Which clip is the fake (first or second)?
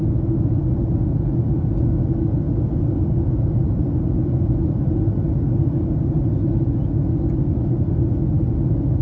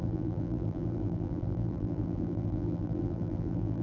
second